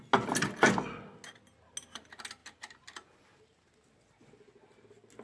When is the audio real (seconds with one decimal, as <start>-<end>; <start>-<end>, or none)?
0.0-5.2